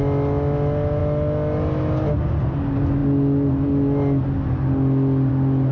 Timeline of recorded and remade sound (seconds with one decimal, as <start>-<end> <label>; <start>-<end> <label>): 0.0-5.7 recorded